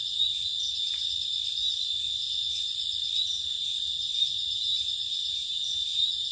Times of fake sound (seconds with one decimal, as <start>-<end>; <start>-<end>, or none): 3.3-6.3